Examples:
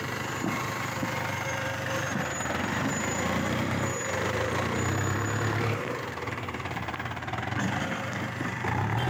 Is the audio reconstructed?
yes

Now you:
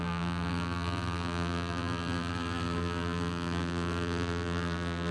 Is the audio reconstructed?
yes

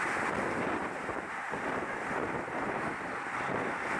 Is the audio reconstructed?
yes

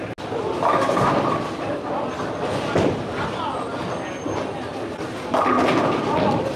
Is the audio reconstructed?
no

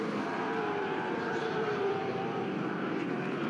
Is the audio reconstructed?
yes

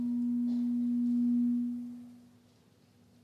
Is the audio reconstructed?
no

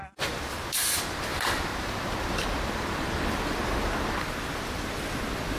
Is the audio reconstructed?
yes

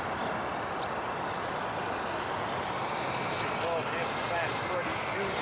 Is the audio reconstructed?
no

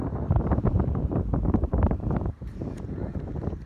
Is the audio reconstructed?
yes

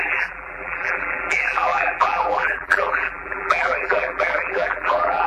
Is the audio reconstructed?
yes